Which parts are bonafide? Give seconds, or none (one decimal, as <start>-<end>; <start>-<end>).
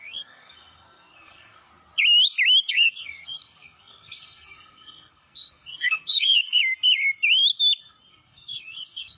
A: 1.7-2.7; 6.6-8.1